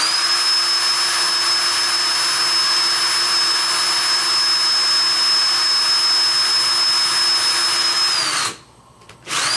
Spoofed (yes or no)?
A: no